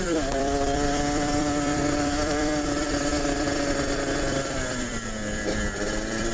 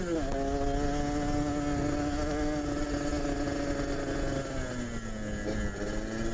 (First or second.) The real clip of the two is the second